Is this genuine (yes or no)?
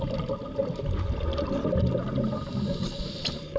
yes